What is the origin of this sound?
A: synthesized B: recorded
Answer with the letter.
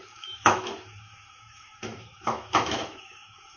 A